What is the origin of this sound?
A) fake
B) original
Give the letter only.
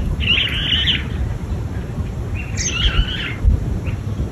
B